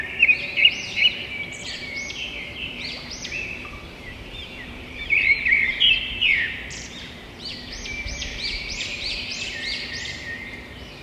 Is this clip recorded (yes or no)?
no